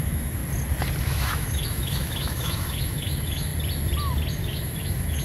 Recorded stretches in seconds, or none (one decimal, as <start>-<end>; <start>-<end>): 0.4-1.0; 3.5-4.3